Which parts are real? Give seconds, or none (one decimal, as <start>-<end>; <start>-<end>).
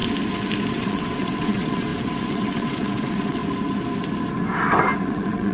0.0-0.7; 3.4-5.0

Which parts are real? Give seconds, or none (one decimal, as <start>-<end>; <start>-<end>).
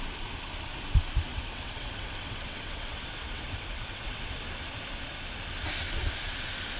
0.0-1.3; 4.4-6.8